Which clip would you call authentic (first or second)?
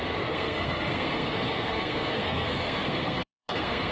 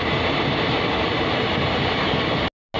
second